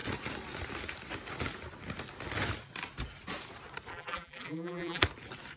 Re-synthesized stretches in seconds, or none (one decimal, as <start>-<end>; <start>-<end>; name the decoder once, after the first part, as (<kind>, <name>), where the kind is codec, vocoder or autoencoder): 3.9-5.0 (vocoder, BigVGAN v2)